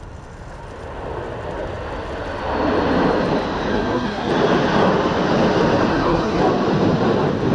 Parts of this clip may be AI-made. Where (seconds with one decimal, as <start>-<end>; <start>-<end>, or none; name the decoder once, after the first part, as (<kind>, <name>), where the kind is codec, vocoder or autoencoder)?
3.7-4.3 (codec, SNAC); 5.9-6.4